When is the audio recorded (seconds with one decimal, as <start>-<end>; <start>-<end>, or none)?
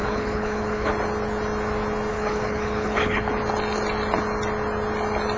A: 0.9-2.1; 3.3-5.4